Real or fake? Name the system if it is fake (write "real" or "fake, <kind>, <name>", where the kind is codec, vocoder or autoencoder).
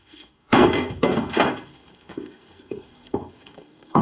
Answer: fake, codec, SNAC